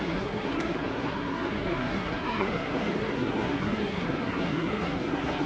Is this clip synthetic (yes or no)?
yes